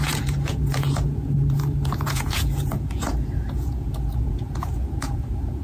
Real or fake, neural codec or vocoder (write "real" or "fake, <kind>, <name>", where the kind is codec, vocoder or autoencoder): fake, vocoder, Vocos